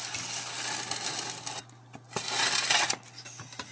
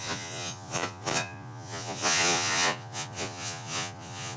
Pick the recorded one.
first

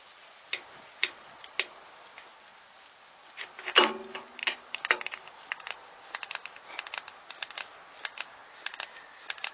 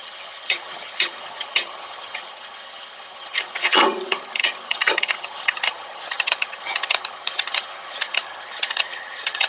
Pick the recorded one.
first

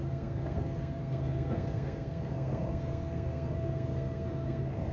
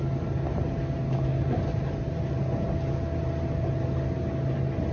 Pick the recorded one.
second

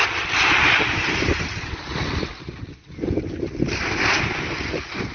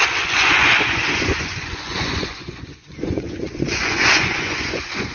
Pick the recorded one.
first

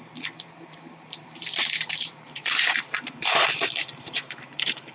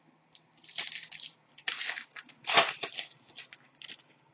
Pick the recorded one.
second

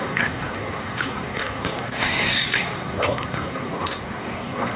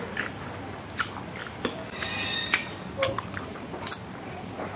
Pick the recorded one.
second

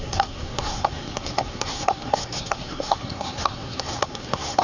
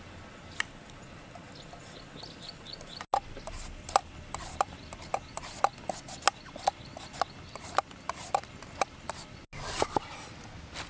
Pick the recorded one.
second